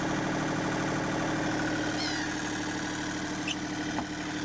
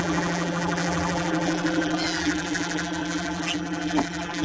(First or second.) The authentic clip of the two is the first